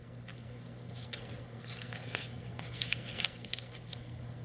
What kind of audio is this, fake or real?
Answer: fake